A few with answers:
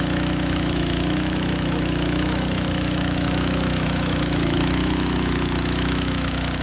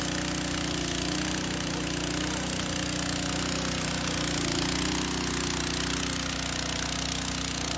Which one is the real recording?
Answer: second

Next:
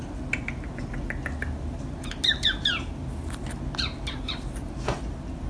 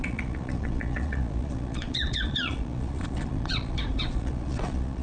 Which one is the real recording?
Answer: first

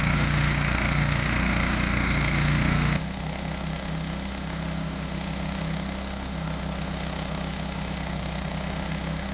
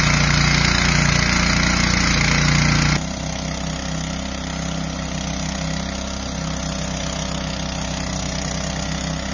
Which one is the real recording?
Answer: second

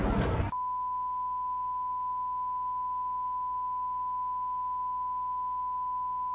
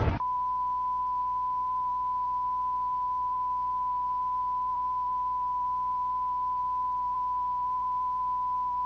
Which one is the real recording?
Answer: first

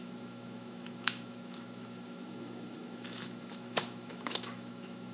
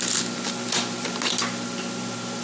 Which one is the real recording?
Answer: second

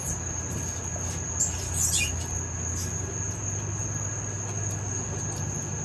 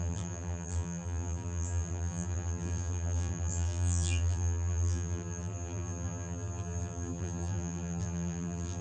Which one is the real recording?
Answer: first